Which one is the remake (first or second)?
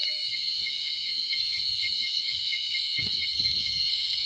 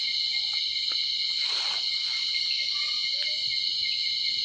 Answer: first